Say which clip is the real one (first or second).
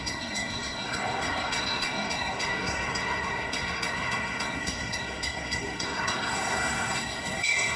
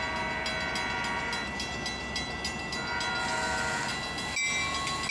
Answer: second